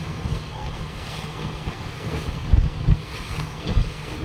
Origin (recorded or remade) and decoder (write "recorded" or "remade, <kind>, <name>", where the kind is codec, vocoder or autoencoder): remade, codec, SNAC